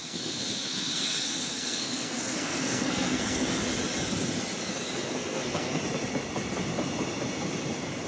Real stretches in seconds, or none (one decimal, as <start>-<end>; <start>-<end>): 3.6-4.7; 5.8-8.1